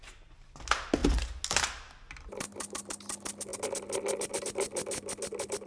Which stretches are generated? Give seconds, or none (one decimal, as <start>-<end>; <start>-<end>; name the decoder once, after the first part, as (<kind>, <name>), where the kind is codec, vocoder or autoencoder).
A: none